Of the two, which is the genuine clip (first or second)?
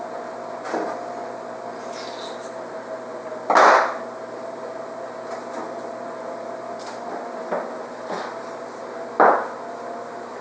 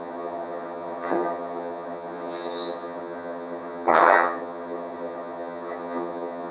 first